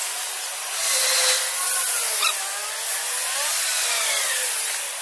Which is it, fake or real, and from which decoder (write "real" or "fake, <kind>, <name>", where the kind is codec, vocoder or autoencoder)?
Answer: real